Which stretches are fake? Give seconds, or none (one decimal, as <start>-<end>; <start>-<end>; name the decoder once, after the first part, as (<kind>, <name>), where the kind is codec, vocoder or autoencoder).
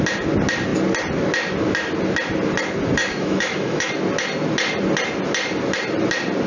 3.0-3.9 (autoencoder, DAC-VAE)